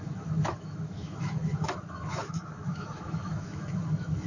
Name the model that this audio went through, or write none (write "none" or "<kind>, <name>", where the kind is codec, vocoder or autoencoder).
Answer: autoencoder, DAC-VAE